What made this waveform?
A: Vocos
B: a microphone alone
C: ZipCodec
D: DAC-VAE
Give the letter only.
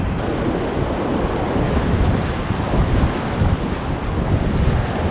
B